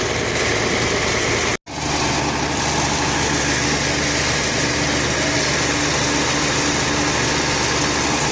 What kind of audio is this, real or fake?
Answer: real